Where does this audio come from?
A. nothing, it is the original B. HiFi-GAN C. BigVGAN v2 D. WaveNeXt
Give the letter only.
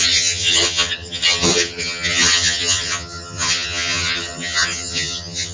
B